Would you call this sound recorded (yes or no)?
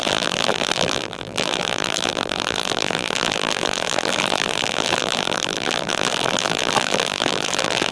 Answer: no